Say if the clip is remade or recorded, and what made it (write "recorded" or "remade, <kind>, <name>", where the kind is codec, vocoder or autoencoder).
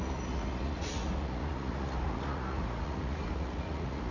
remade, vocoder, Vocos